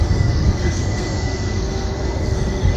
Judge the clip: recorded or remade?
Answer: remade